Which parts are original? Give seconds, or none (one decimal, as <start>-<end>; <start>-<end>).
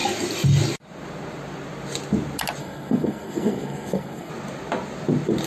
0.0-2.6; 4.3-5.5